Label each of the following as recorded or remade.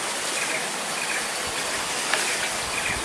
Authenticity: recorded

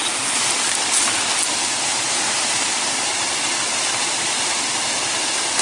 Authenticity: recorded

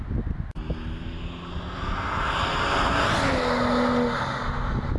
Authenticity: recorded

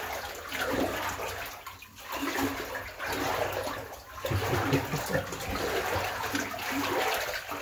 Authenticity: recorded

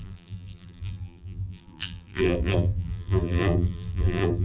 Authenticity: remade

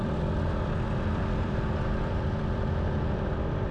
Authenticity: remade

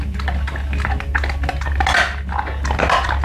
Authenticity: recorded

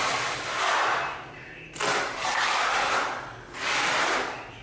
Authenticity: recorded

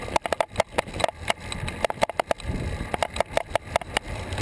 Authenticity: recorded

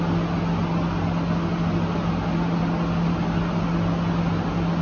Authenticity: recorded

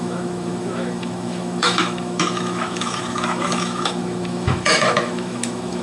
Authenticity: remade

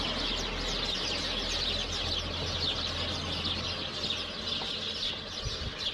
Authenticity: recorded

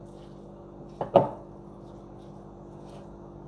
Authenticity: recorded